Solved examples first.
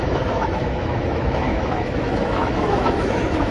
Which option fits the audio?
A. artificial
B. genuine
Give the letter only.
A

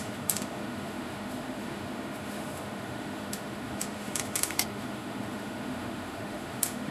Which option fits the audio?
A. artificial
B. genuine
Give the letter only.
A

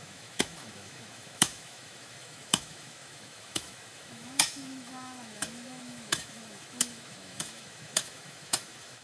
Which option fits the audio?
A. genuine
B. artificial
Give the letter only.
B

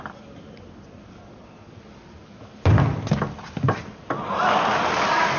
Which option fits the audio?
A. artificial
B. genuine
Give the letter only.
B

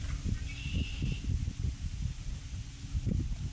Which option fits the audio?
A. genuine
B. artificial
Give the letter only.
A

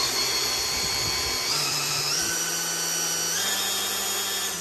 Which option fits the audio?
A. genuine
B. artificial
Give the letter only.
A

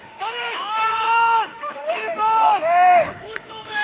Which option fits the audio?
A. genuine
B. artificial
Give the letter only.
B